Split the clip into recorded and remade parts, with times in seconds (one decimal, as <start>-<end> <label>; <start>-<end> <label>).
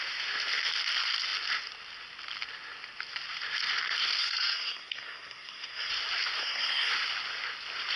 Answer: 0.0-4.2 recorded; 4.2-5.9 remade; 5.9-6.4 recorded; 6.4-6.9 remade; 6.9-8.0 recorded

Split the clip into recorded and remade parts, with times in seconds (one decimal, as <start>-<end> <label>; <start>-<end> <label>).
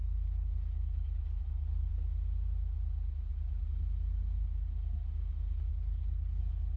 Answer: 0.0-1.9 remade; 1.9-5.7 recorded; 5.7-6.8 remade